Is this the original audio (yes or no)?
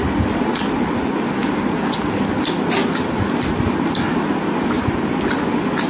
yes